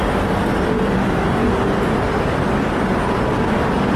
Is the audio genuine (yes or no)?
yes